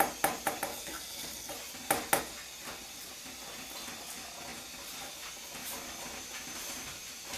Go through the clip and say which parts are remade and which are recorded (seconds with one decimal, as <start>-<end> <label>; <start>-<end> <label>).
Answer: 0.0-0.7 recorded; 0.7-1.5 remade; 1.5-7.4 recorded